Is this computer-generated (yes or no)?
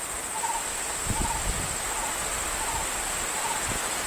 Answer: no